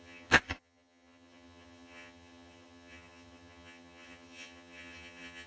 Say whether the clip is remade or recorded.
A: remade